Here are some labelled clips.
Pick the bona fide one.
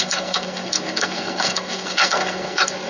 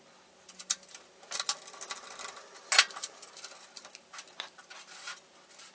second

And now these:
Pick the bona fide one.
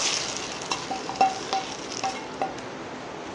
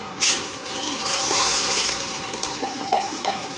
first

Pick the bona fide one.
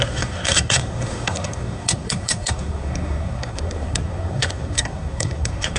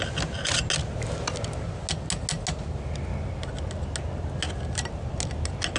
second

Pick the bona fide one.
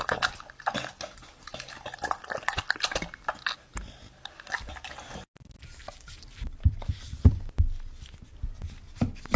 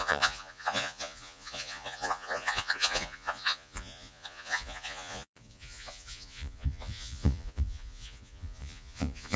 first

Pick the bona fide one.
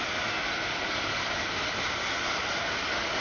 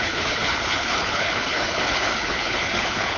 first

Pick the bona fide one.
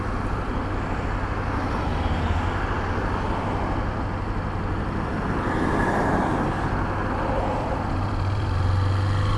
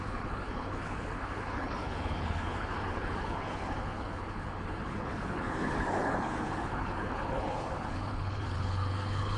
first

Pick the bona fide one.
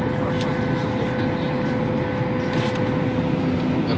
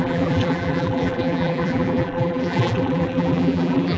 first